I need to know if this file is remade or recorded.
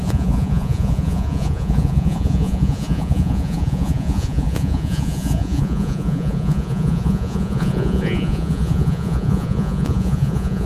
remade